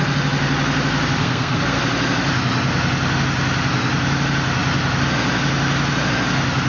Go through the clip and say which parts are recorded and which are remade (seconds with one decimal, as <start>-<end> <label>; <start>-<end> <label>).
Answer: 0.0-1.2 recorded; 1.2-1.8 remade; 1.8-6.7 recorded